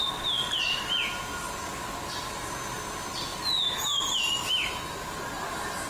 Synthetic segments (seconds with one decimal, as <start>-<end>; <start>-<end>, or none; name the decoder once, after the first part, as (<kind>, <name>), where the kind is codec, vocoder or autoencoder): none